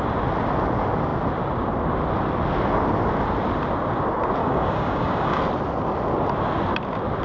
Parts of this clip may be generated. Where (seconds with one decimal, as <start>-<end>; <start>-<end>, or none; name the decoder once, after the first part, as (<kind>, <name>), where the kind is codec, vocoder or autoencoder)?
4.4-5.4 (codec, DAC)